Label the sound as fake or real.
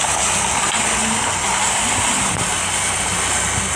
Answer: real